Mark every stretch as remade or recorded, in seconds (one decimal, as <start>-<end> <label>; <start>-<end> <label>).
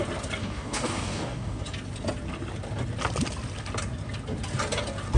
0.0-0.4 recorded; 0.4-1.6 remade; 1.6-5.2 recorded